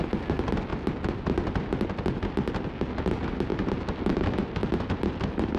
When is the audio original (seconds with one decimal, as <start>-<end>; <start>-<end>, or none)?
0.0-5.6